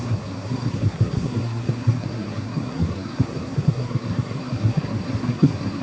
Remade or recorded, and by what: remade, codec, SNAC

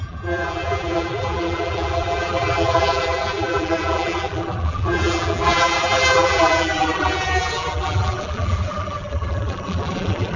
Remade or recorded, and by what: remade, vocoder, BigVGAN v2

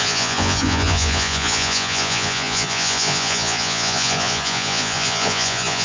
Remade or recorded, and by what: remade, vocoder, Vocos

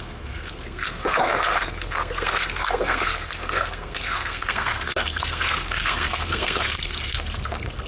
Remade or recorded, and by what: remade, codec, SNAC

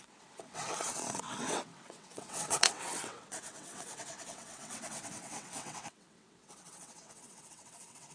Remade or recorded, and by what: remade, vocoder, WaveNeXt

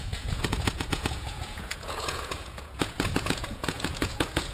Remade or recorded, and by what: remade, vocoder, Vocos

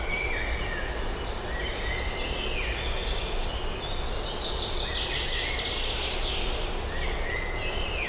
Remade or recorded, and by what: recorded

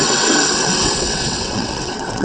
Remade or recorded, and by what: remade, vocoder, WaveNeXt